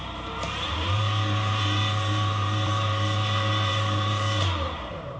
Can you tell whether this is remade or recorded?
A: remade